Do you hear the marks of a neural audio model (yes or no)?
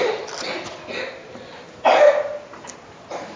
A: no